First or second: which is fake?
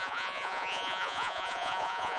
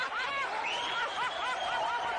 first